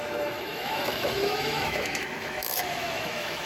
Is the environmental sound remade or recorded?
remade